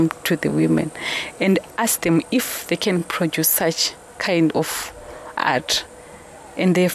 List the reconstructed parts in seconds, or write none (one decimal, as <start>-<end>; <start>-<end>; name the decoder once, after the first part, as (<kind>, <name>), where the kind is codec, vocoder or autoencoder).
0.5-1.7 (vocoder, Vocos); 5.4-6.3